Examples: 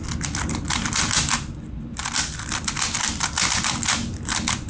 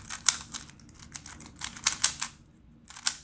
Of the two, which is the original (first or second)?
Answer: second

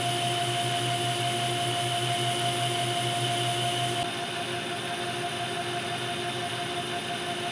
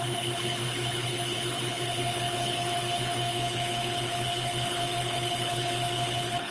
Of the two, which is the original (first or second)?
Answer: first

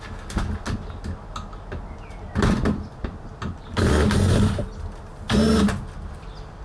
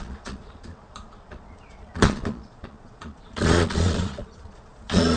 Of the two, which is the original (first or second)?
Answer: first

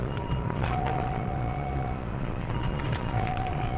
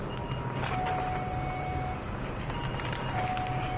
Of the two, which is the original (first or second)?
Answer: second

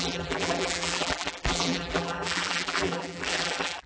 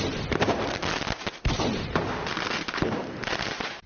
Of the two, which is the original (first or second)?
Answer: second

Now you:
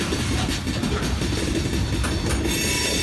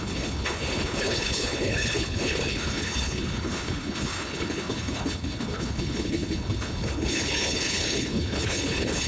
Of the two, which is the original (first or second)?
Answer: first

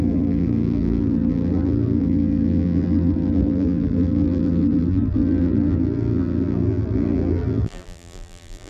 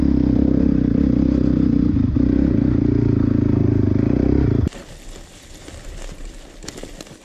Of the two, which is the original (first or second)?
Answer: second